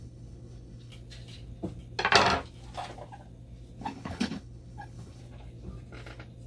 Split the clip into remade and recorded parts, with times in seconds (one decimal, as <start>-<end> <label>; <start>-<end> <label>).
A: 0.0-0.9 remade; 0.9-3.8 recorded; 3.8-5.2 remade; 5.2-6.5 recorded